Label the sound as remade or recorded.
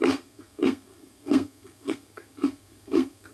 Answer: remade